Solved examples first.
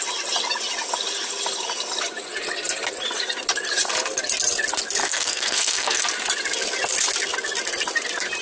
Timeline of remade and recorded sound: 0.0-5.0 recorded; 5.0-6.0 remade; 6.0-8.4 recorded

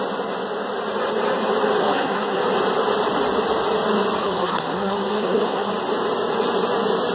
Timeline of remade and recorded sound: 0.0-1.8 recorded; 1.8-2.4 remade; 2.4-4.2 recorded; 4.2-5.7 remade; 5.7-7.1 recorded

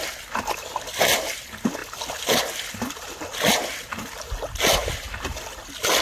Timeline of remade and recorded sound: 0.0-6.0 recorded

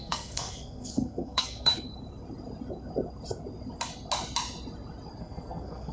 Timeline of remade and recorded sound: 0.0-1.7 remade; 1.7-5.2 recorded; 5.2-5.9 remade